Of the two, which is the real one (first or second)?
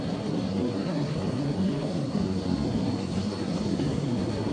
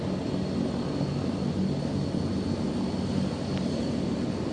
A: second